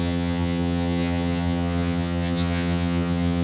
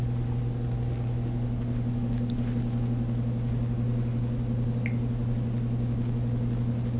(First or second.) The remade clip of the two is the first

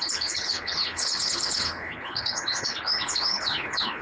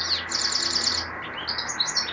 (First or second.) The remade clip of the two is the first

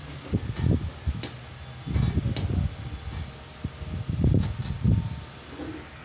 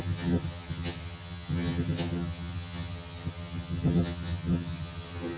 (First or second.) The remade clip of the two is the second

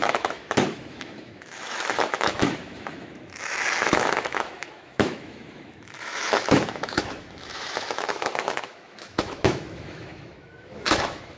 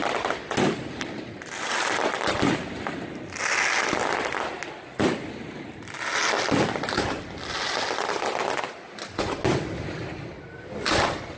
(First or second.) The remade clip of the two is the first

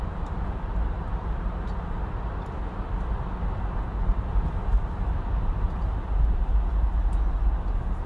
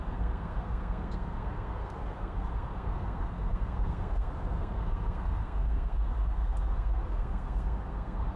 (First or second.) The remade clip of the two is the second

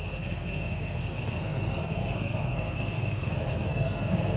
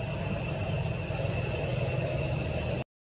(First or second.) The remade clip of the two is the first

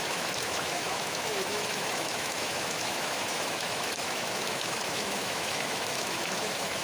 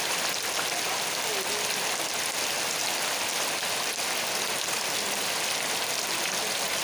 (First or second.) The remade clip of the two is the first